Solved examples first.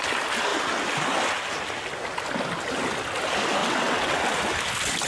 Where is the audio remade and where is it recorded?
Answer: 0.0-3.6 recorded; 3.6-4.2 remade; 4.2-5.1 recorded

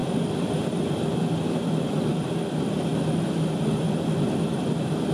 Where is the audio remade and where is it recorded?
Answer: 0.0-5.1 remade